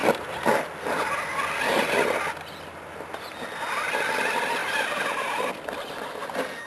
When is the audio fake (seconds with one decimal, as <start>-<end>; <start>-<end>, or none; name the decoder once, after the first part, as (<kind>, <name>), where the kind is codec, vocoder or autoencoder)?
4.6-5.5 (vocoder, BigVGAN v2)